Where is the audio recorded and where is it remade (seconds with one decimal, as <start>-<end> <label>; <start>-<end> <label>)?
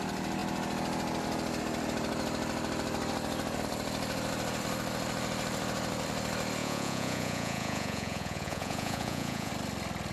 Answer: 0.0-6.6 recorded; 6.6-9.5 remade; 9.5-10.1 recorded